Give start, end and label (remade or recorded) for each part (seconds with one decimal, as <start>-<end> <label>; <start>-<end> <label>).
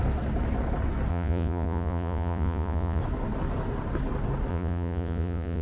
0.0-1.1 recorded; 1.1-3.0 remade; 3.0-4.5 recorded; 4.5-5.6 remade